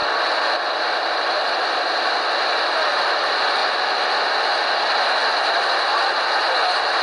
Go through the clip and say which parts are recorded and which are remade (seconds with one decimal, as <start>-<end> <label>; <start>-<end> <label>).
0.0-7.0 recorded